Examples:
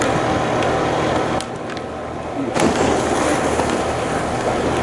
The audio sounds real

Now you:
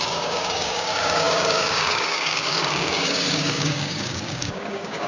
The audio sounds fake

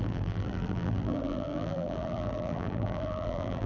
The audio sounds fake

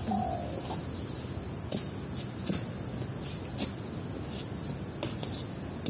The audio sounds real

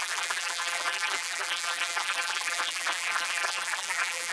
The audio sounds fake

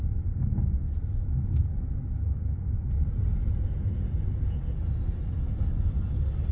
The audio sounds real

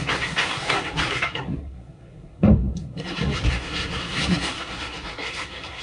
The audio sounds fake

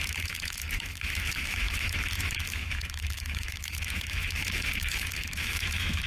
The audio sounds fake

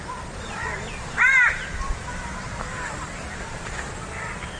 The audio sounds real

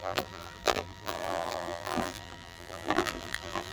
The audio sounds fake